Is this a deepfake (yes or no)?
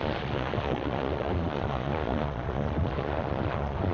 yes